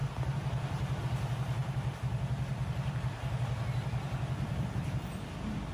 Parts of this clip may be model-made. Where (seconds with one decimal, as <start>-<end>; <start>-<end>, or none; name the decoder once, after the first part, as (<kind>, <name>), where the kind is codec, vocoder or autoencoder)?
0.0-1.0 (vocoder, BigVGAN v2); 1.6-2.1; 2.5-5.3